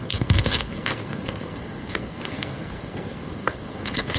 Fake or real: fake